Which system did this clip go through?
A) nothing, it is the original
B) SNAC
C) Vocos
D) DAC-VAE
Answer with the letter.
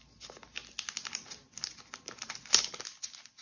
A